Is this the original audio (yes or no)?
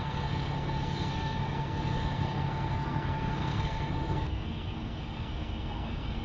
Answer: no